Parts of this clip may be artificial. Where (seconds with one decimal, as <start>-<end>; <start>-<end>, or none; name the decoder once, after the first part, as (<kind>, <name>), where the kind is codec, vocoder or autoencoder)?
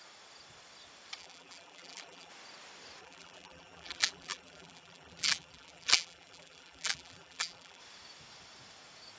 1.2-2.3 (vocoder, BigVGAN v2); 3.0-7.8